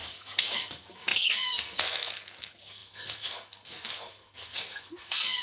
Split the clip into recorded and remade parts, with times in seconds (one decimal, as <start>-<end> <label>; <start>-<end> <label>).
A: 0.0-5.4 remade